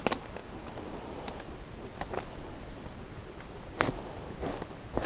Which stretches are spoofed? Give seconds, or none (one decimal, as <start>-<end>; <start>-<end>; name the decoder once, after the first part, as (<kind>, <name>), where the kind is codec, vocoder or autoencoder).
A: none